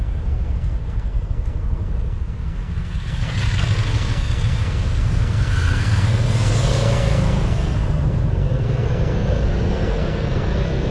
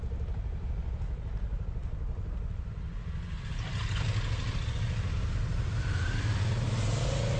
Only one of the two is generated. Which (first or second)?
first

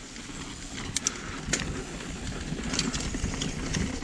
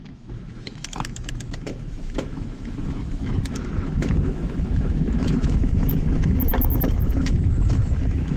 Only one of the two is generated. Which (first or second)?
second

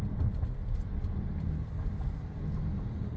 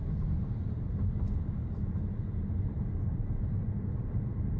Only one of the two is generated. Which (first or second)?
second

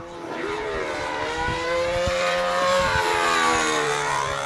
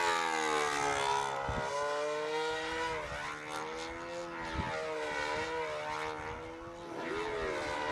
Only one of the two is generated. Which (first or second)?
first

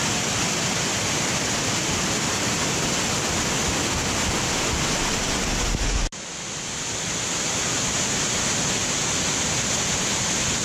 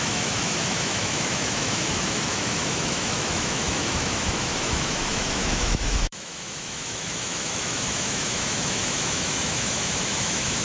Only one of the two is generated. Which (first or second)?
second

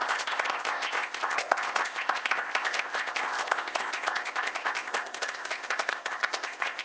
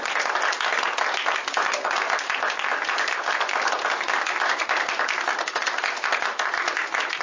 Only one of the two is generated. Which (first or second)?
first